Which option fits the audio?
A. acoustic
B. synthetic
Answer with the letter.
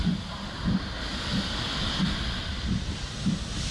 A